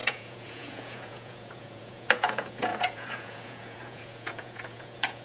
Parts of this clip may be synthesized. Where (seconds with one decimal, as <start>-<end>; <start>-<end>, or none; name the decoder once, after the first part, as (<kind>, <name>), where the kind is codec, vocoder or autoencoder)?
0.0-5.2 (vocoder, Vocos)